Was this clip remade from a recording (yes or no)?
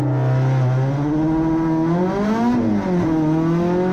no